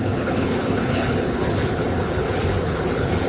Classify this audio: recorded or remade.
remade